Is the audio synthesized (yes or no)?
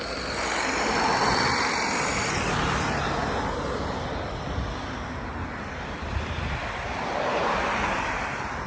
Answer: no